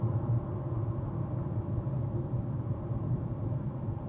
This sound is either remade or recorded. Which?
recorded